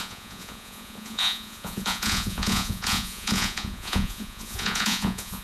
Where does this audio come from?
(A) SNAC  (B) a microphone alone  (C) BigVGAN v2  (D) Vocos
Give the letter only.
D